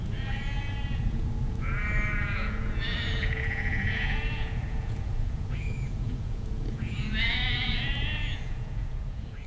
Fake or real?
fake